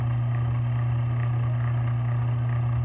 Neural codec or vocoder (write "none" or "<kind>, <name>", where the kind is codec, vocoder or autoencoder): none